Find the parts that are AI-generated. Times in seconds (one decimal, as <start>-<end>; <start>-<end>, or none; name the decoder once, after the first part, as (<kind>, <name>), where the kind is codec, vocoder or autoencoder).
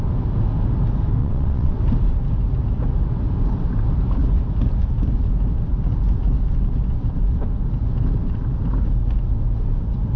1.2-1.8 (vocoder, WaveNeXt)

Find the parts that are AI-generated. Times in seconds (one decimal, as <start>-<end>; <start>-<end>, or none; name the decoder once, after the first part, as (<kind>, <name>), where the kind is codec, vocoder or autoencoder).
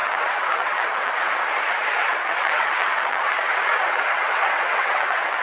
0.0-1.1 (vocoder, WaveNeXt); 2.1-5.4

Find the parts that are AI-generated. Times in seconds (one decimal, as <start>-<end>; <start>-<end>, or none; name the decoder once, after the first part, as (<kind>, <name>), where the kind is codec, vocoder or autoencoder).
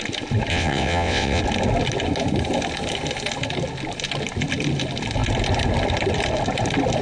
0.5-1.4 (vocoder, WaveNeXt)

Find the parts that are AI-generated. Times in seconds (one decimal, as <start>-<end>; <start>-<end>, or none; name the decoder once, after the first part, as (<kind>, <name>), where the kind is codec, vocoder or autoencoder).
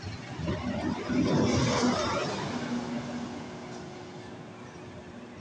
none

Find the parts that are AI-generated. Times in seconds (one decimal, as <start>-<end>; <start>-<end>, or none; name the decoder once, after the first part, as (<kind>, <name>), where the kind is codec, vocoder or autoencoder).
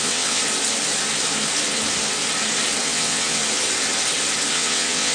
0.0-0.4 (vocoder, WaveNeXt); 2.8-3.4; 4.5-5.1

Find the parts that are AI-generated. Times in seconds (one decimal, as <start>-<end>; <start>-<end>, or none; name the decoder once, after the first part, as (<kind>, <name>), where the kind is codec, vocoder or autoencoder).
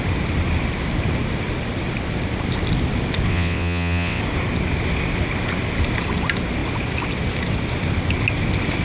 3.3-4.2 (vocoder, WaveNeXt)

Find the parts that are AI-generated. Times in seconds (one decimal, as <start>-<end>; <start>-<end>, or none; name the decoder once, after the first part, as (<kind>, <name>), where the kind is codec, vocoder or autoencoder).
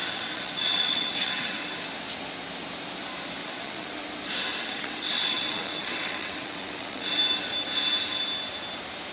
0.0-1.6 (vocoder, WaveNeXt); 3.4-4.0; 4.6-7.1